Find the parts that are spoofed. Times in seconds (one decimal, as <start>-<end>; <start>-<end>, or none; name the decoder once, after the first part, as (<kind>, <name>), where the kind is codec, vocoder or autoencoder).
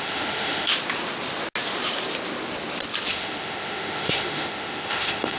0.0-0.7 (autoencoder, DAC-VAE); 3.1-5.4